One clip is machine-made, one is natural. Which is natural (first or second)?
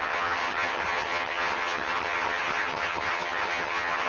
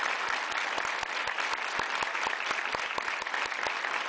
second